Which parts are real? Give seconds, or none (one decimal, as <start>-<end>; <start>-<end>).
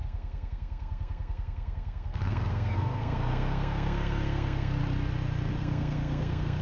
4.8-5.6